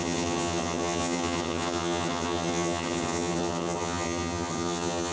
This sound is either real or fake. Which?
fake